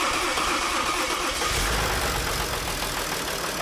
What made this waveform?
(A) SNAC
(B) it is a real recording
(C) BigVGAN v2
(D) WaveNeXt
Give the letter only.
B